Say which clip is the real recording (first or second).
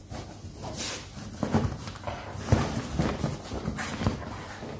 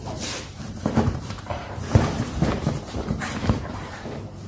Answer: first